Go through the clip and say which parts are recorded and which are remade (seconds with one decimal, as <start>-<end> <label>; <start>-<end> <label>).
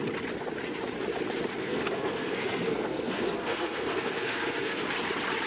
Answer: 0.0-1.6 recorded; 1.6-4.8 remade; 4.8-5.5 recorded